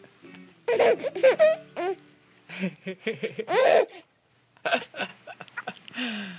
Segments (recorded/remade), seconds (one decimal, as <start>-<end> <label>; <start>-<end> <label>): 0.0-3.6 recorded; 3.6-4.3 remade; 4.3-6.4 recorded